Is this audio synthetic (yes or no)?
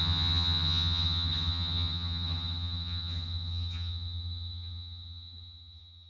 yes